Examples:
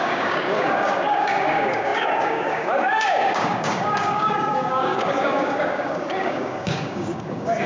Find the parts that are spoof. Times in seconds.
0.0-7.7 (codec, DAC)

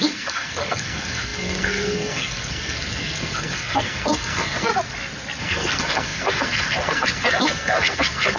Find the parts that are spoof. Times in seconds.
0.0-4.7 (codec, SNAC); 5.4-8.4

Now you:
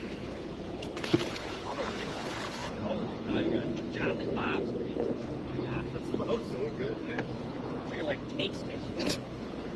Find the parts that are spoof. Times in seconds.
0.0-9.8 (codec, HILCodec)

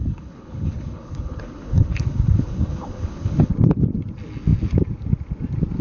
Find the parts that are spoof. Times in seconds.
0.0-3.5 (codec, HILCodec)

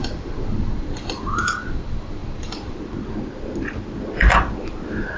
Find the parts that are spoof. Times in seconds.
none

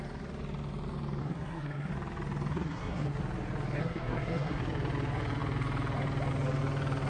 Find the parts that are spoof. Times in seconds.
1.2-1.9 (codec, SNAC); 2.5-3.2; 3.8-4.6